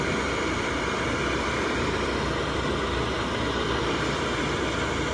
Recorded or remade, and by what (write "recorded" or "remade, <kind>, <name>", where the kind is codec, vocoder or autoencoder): remade, vocoder, BigVGAN v2